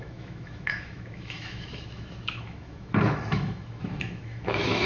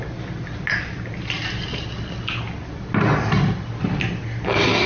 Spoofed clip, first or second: first